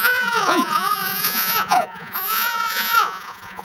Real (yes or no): no